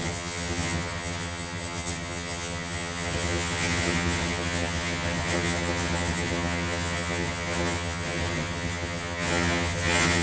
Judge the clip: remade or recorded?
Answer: remade